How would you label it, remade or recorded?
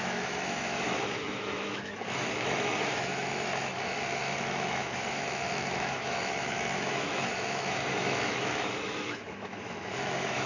remade